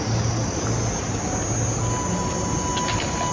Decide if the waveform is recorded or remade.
recorded